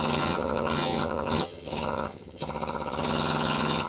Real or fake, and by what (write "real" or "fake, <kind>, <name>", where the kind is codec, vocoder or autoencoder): fake, vocoder, HiFi-GAN